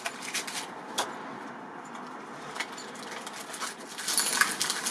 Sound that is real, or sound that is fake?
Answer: real